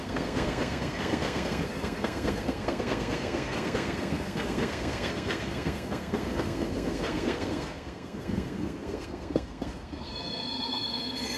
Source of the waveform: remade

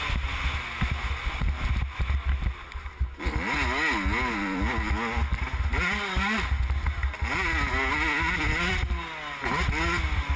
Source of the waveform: recorded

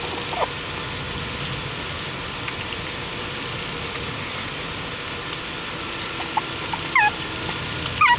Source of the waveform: recorded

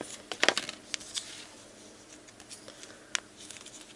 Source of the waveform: recorded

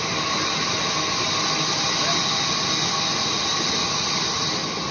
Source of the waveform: recorded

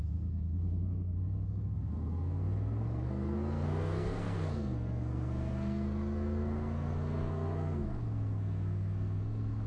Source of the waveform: remade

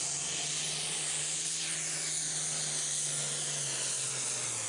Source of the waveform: recorded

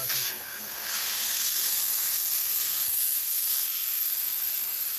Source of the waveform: remade